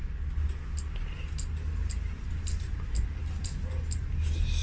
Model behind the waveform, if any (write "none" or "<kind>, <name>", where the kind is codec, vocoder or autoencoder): none